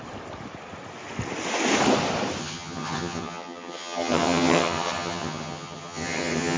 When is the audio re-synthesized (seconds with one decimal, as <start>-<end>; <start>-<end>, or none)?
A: 2.4-6.6

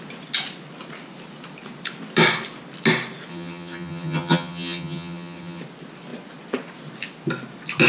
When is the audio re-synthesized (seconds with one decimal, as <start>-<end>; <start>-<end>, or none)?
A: 3.3-5.6

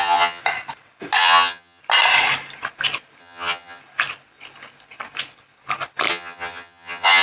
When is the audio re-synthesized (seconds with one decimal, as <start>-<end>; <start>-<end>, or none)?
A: 0.0-0.4; 1.2-1.8; 3.2-3.8; 6.1-7.2